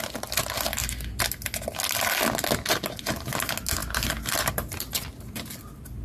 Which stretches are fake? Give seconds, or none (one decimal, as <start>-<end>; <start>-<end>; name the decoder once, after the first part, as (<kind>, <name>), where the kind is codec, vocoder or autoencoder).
none